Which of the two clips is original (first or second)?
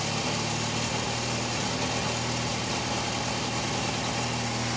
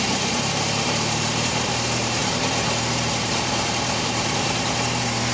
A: first